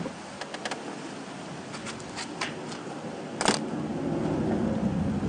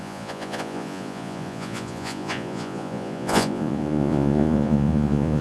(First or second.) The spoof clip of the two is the second